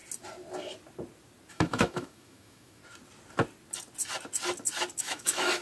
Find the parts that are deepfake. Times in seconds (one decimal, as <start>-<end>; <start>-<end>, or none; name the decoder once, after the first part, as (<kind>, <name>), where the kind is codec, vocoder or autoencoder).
1.5-2.8 (autoencoder, DAC-VAE); 5.0-5.6